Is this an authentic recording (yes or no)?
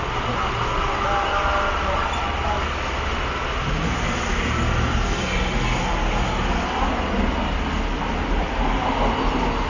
yes